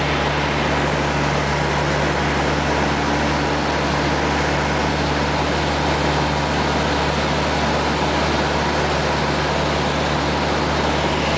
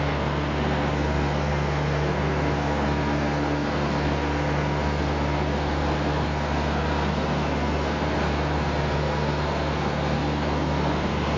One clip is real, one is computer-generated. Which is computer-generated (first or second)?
second